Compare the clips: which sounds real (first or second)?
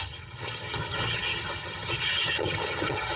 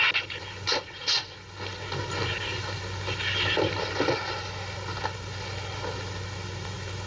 second